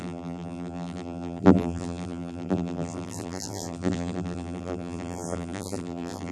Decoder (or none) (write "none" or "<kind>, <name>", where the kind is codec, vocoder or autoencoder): vocoder, BigVGAN v2